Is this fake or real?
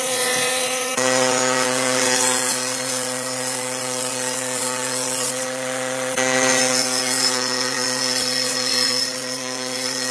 fake